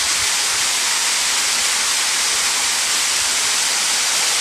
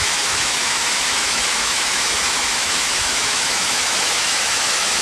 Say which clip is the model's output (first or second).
second